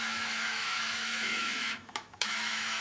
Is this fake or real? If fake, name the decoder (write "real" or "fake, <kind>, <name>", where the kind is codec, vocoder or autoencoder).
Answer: fake, autoencoder, DAC-VAE